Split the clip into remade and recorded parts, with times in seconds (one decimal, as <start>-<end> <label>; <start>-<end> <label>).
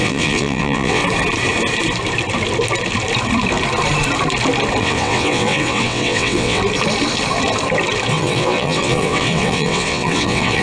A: 0.0-1.0 remade; 1.0-4.8 recorded; 4.8-6.6 remade; 6.6-8.1 recorded; 8.1-10.6 remade